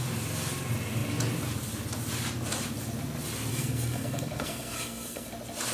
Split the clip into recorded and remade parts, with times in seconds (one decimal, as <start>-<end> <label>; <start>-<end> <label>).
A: 0.0-3.5 recorded; 3.5-5.3 remade; 5.3-5.7 recorded